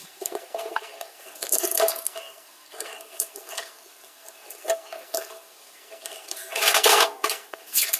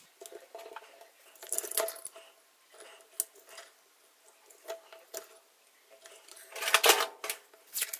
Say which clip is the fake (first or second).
first